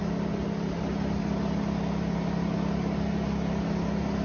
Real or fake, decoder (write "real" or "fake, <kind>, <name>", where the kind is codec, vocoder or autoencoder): real